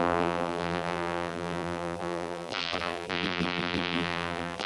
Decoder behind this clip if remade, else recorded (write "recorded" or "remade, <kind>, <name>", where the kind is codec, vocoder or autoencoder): remade, vocoder, BigVGAN v2